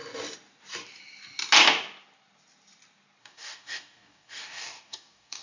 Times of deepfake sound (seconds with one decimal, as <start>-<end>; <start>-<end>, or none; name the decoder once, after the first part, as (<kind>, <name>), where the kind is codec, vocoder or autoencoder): 3.2-5.4 (codec, DAC)